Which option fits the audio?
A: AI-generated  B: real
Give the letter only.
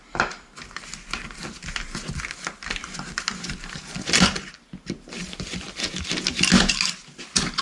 B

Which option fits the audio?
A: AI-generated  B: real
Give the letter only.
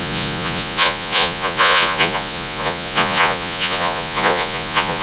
A